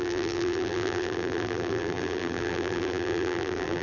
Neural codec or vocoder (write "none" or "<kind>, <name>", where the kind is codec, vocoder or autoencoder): vocoder, BigVGAN v2